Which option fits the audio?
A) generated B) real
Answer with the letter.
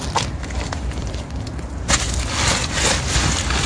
B